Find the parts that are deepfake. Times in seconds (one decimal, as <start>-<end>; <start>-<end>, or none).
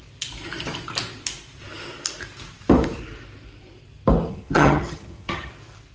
4.3-5.5